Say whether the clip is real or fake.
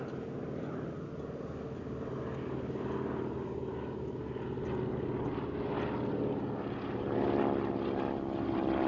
real